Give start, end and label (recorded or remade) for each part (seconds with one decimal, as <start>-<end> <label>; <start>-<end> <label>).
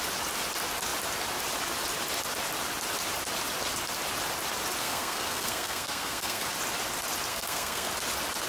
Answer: 0.0-4.8 recorded; 4.8-6.5 remade; 6.5-7.3 recorded; 7.3-7.9 remade; 7.9-8.5 recorded